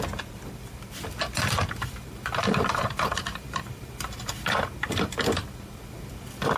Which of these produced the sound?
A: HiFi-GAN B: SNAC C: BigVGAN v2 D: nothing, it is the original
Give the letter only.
C